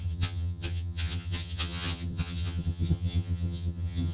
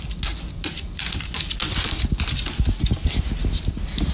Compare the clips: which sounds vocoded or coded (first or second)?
first